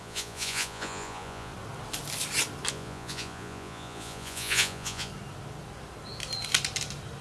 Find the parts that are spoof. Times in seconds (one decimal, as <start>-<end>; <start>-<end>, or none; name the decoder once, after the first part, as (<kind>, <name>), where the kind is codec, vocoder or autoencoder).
0.0-1.5 (vocoder, Vocos); 2.7-5.1